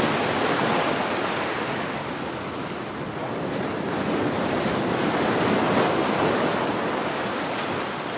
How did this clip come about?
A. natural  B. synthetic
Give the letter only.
A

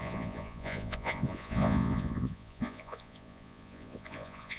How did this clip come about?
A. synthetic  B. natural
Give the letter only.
A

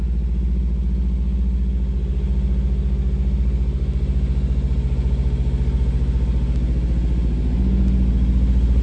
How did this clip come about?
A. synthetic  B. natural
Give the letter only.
B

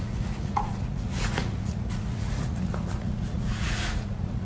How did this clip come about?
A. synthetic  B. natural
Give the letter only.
A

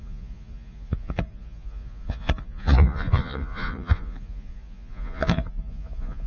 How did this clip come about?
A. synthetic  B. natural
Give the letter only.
A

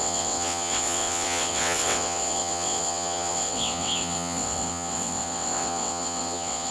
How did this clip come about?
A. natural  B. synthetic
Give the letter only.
B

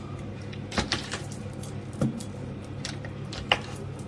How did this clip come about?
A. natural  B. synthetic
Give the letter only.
B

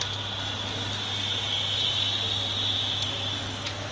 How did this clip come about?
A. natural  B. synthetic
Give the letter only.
A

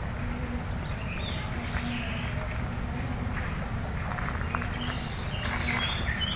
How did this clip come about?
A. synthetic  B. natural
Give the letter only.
B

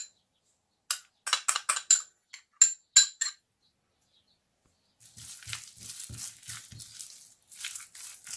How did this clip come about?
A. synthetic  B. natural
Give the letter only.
B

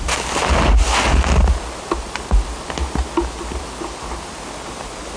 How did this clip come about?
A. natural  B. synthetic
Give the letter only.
A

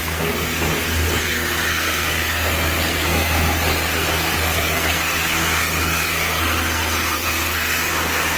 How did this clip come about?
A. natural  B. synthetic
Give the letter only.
B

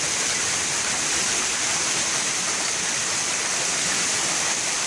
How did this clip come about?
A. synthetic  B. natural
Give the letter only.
B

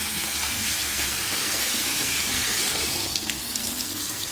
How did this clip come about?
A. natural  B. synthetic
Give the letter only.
B